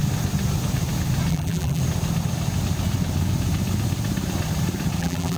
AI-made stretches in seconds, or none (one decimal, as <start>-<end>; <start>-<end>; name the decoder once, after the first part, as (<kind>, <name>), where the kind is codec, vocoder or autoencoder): 1.3-1.8 (vocoder, BigVGAN v2); 5.0-5.4